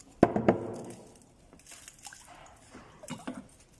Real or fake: real